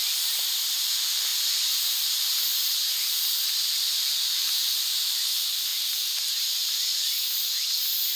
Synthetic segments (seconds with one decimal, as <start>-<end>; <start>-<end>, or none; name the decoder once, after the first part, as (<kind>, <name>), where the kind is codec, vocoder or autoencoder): 0.0-1.3 (vocoder, BigVGAN v2); 1.8-2.5; 3.1-6.9